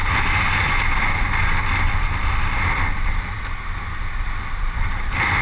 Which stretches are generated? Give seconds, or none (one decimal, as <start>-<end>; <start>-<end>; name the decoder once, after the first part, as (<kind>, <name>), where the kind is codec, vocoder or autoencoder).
none